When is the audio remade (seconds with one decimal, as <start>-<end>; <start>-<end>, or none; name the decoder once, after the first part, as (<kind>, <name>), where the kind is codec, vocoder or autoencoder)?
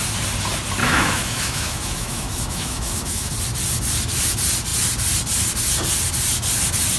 0.8-3.3 (autoencoder, DAC-VAE)